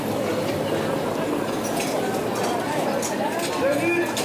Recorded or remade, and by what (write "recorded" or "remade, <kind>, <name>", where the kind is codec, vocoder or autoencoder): recorded